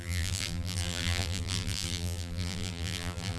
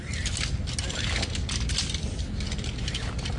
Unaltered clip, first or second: second